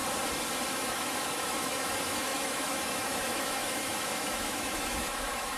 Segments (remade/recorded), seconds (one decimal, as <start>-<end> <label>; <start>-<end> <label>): 0.0-0.7 recorded; 0.7-5.6 remade